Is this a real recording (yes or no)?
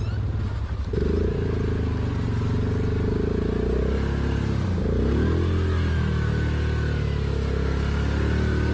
yes